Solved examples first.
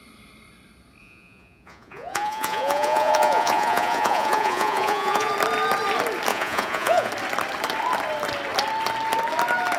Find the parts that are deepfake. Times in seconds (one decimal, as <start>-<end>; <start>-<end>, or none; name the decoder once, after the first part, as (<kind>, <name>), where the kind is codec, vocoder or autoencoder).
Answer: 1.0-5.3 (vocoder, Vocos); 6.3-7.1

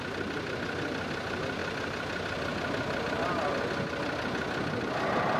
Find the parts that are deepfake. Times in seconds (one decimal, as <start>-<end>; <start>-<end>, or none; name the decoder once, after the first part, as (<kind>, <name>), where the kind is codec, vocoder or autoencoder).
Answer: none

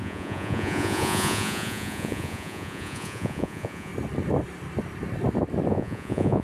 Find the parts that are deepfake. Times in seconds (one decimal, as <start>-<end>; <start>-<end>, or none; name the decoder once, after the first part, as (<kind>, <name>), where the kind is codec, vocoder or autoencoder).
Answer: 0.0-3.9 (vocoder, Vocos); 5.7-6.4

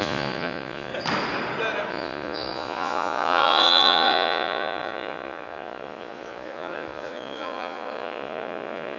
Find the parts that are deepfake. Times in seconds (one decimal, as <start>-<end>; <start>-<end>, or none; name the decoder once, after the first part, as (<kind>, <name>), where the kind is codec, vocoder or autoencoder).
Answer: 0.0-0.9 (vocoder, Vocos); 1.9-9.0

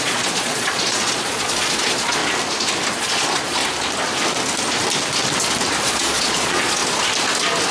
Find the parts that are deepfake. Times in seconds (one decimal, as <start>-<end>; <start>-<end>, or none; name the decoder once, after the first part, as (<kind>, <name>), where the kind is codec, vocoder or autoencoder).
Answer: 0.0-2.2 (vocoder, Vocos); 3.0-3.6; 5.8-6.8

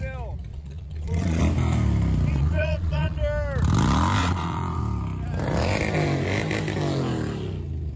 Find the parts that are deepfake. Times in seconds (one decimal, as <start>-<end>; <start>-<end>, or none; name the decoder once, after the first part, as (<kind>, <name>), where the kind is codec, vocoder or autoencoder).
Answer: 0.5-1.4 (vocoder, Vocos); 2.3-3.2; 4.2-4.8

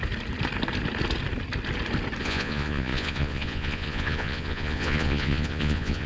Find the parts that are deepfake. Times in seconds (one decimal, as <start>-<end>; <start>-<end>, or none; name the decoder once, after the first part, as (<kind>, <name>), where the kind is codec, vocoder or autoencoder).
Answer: 2.2-6.1 (vocoder, Vocos)

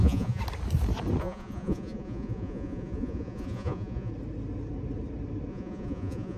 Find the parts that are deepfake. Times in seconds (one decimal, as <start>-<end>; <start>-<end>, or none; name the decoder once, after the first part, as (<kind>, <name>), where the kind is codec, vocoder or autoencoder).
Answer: 0.0-0.4 (vocoder, Vocos); 1.2-4.1; 5.5-6.4